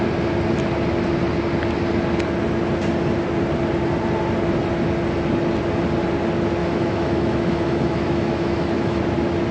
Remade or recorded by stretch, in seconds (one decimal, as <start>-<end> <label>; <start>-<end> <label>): 0.0-6.6 recorded; 6.6-9.0 remade; 9.0-9.5 recorded